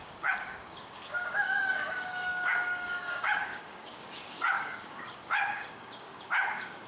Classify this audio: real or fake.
fake